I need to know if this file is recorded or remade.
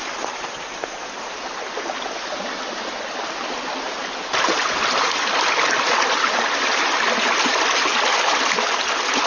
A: recorded